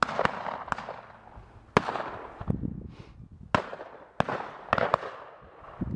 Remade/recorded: recorded